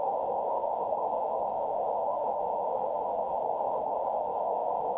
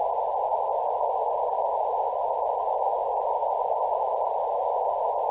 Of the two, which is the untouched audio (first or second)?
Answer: second